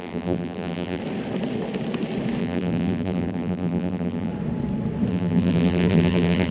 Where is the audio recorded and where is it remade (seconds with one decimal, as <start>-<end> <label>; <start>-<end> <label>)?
0.0-1.0 remade; 1.0-2.4 recorded; 2.4-4.3 remade; 4.3-5.1 recorded; 5.1-6.5 remade